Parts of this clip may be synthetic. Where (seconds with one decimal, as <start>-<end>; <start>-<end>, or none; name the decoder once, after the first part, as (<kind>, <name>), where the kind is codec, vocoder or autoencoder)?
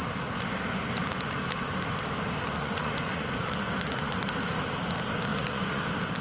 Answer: 2.6-4.2 (vocoder, Vocos); 5.3-5.8